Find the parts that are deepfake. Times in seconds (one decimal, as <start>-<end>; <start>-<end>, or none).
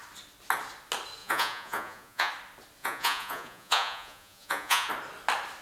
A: 1.2-2.3; 2.8-4.9